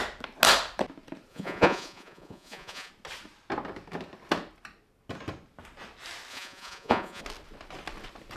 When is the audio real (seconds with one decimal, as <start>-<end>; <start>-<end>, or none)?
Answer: 0.0-1.3; 2.9-6.3; 7.2-8.4